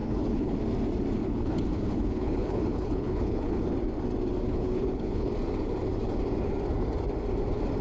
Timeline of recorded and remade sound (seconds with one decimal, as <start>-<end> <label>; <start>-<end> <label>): 0.0-0.6 remade; 0.6-1.2 recorded; 1.2-3.6 remade; 3.6-4.5 recorded; 4.5-5.3 remade; 5.3-7.8 recorded

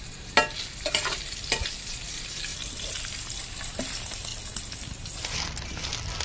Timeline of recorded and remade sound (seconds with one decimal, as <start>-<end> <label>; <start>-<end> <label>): 0.0-6.2 recorded

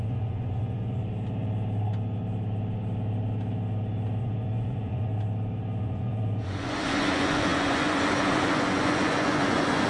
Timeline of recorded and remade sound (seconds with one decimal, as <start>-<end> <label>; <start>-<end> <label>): 0.0-1.0 remade; 1.0-4.2 recorded; 4.2-5.1 remade; 5.1-5.8 recorded; 5.8-9.9 remade

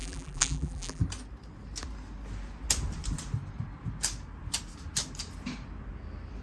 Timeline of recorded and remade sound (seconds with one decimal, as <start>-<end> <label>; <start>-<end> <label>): 0.0-1.0 remade; 1.0-6.4 recorded

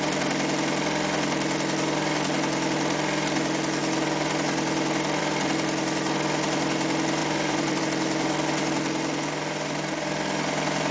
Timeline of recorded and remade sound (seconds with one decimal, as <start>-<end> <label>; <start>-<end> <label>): 0.0-7.2 recorded; 7.2-7.8 remade; 7.8-10.9 recorded

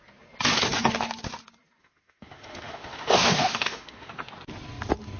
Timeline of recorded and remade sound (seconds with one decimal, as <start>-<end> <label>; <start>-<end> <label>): 0.0-1.8 recorded; 1.8-4.1 remade; 4.1-5.2 recorded

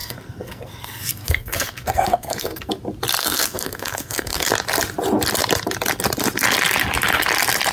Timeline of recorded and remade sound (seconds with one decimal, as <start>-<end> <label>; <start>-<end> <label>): 0.0-2.7 remade; 2.7-3.2 recorded; 3.2-4.5 remade; 4.5-7.7 recorded